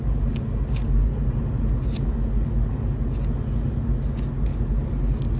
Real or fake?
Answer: real